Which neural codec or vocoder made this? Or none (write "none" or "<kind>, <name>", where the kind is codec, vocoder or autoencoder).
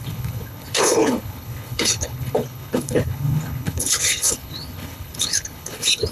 codec, HILCodec